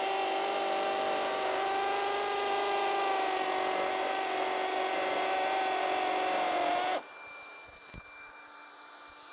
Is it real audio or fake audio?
real